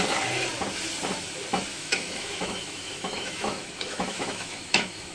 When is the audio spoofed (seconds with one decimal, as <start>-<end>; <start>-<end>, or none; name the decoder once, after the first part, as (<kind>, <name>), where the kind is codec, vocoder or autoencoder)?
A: 1.7-5.1 (autoencoder, DAC-VAE)